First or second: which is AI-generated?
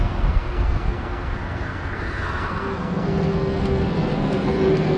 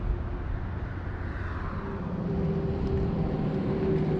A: first